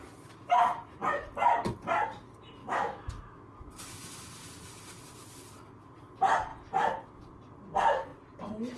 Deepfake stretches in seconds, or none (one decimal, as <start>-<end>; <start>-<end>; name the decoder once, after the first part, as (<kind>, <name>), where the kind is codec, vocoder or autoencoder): 2.6-3.7 (autoencoder, DAC-VAE)